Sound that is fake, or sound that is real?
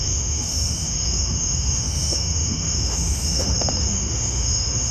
fake